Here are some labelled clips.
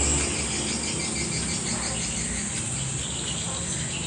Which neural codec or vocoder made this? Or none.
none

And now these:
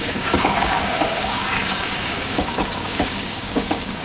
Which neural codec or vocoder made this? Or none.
codec, DAC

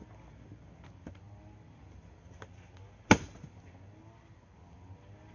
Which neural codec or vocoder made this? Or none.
none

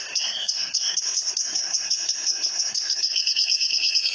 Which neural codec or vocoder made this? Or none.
codec, SNAC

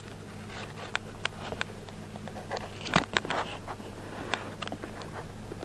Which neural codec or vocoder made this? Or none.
vocoder, BigVGAN v2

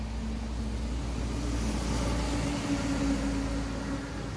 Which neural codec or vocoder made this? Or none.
none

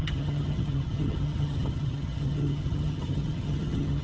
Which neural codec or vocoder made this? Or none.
vocoder, HiFi-GAN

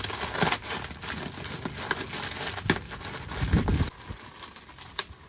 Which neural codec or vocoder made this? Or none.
none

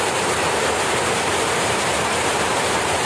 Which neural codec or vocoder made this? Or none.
vocoder, BigVGAN v2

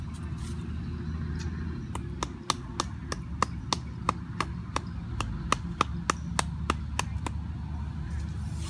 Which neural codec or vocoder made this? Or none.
none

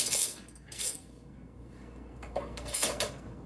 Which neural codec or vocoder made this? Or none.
codec, SNAC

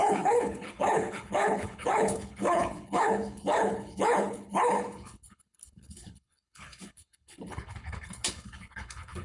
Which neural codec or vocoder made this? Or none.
codec, HILCodec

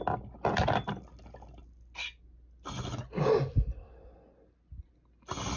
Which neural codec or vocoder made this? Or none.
none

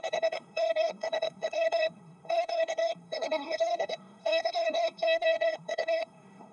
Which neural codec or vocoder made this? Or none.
codec, SNAC